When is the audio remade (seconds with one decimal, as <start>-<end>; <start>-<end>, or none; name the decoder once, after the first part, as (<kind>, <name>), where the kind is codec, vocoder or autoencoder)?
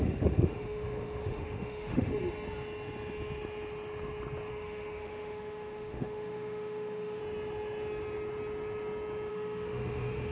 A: 0.0-2.1 (autoencoder, DAC-VAE); 4.5-7.2; 9.3-10.3